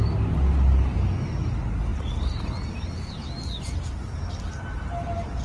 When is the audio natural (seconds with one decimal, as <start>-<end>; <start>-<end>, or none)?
0.0-5.4